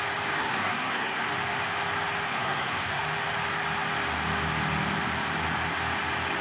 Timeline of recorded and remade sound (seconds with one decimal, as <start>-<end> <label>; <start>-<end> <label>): 0.0-0.4 recorded; 0.4-1.3 remade; 1.3-2.3 recorded; 2.3-3.0 remade; 3.0-6.4 recorded